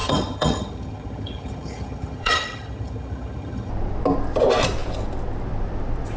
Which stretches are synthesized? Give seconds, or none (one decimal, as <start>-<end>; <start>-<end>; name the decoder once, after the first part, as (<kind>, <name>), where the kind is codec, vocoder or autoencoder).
0.0-3.7 (vocoder, HiFi-GAN)